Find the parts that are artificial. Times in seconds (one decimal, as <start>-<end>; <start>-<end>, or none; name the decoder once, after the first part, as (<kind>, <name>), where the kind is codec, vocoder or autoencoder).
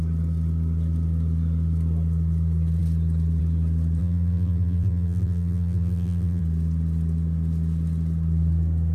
4.0-6.4 (vocoder, BigVGAN v2)